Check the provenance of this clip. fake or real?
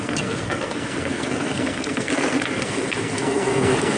fake